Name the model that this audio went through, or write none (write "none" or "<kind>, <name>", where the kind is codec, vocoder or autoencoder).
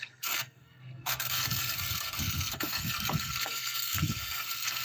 codec, SNAC